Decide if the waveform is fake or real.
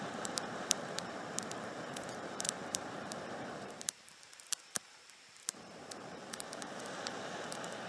fake